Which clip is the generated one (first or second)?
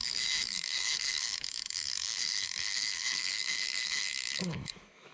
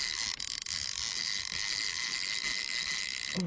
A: first